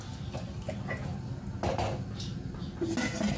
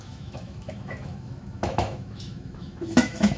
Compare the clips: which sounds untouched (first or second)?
first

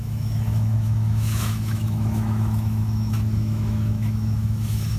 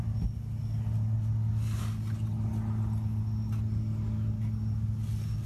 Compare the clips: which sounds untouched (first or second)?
second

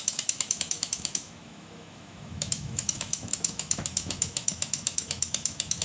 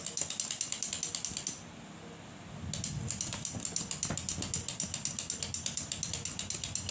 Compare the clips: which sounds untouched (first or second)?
second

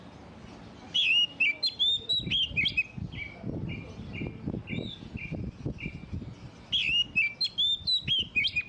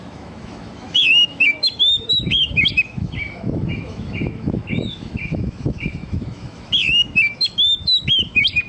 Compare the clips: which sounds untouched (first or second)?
first